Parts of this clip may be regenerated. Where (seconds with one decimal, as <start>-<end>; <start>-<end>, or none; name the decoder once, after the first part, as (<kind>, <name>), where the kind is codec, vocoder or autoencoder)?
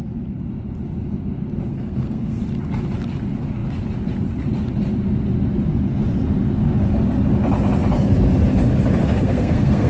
1.7-2.4 (codec, SNAC); 9.0-9.9